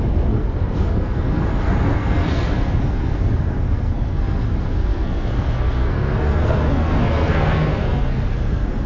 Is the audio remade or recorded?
remade